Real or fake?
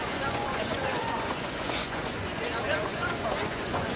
fake